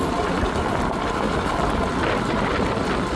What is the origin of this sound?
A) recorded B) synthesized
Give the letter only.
A